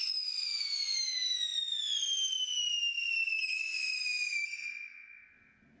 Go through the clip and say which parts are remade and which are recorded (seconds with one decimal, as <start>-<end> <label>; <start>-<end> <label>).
0.0-5.8 recorded